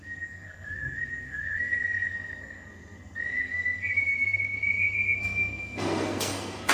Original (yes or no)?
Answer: no